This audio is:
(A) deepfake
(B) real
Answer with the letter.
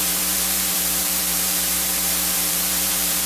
A